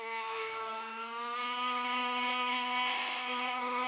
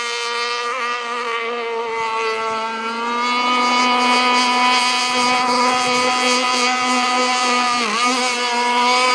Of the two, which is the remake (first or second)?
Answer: first